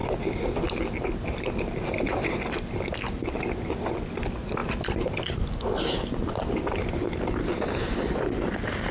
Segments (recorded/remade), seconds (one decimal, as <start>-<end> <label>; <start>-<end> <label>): 0.0-8.9 recorded